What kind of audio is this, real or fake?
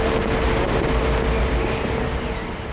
real